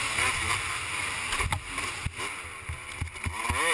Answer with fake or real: real